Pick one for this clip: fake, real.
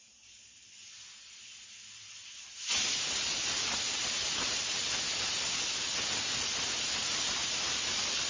real